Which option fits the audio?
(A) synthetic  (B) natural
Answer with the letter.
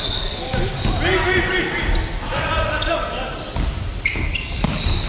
B